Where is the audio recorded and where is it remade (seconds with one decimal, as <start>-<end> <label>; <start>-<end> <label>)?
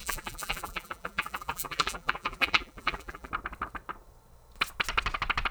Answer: 0.0-3.3 remade; 3.3-5.5 recorded